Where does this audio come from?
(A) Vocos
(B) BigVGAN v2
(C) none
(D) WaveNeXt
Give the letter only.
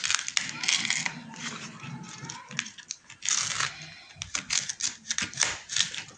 C